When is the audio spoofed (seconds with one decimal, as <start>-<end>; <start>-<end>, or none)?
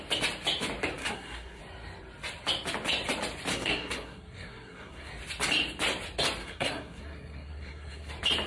1.0-1.6; 3.5-5.1; 6.4-8.1